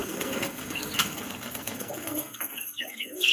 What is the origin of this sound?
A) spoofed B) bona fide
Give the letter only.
A